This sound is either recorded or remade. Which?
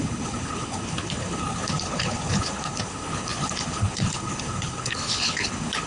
remade